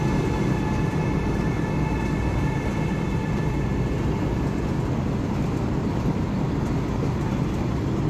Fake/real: real